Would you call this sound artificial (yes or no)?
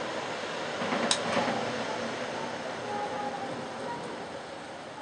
no